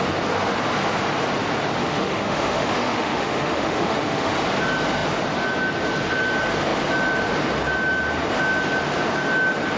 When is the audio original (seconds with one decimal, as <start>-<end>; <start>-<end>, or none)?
0.0-1.8; 4.3-9.8